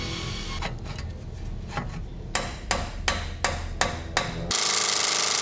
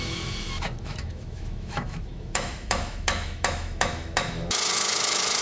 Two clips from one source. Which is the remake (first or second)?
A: second